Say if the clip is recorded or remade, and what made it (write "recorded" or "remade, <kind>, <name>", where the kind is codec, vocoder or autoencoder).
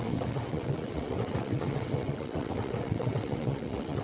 remade, vocoder, WaveNeXt